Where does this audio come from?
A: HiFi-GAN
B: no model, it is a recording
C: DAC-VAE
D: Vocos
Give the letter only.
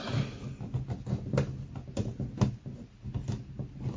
B